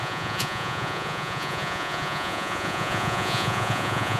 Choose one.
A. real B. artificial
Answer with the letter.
B